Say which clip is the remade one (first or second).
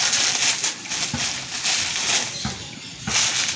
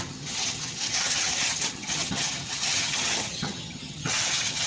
second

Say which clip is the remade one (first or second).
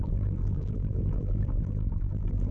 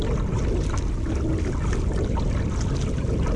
first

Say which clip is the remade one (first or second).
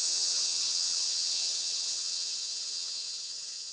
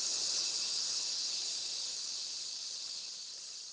first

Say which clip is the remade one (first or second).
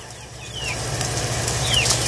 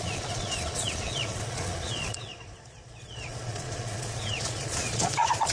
second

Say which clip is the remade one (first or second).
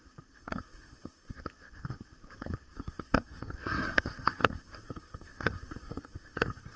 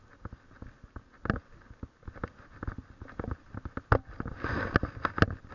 first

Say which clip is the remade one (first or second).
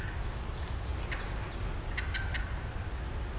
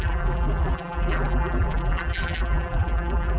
second